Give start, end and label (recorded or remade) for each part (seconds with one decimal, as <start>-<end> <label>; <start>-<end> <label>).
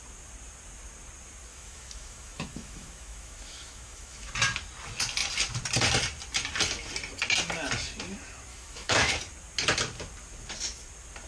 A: 0.0-1.5 recorded; 1.5-4.3 remade; 4.3-8.5 recorded; 8.5-9.1 remade; 9.1-11.3 recorded